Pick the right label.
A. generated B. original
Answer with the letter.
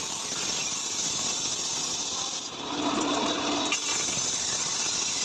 A